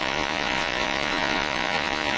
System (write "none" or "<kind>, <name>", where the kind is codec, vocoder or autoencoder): vocoder, Vocos